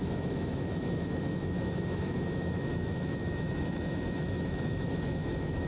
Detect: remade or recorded remade